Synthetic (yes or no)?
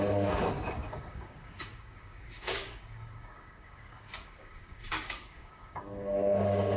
yes